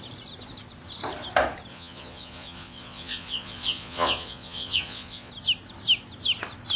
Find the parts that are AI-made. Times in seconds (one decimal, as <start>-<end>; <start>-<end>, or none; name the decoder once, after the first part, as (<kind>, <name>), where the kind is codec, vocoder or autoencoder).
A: 1.7-5.3 (vocoder, Vocos)